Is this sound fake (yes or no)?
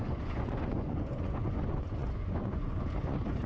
yes